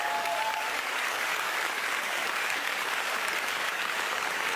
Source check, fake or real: fake